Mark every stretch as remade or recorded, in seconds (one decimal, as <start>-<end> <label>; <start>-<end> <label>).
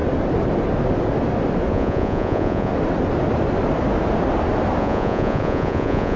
0.0-1.7 recorded; 1.7-2.7 remade; 2.7-4.8 recorded; 4.8-6.2 remade